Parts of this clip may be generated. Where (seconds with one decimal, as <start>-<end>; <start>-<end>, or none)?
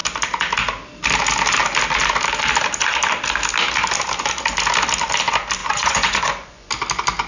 5.6-6.7